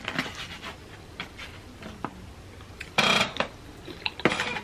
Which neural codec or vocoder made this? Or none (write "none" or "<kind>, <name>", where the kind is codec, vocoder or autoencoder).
none